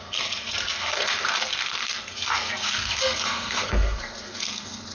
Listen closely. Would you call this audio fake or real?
fake